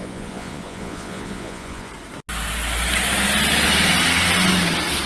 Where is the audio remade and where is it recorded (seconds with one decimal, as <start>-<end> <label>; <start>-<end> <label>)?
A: 0.0-1.9 remade; 1.9-5.1 recorded